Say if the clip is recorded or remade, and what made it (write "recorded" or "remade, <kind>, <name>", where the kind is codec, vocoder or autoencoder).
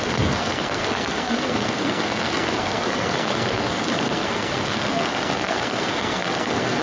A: remade, codec, SNAC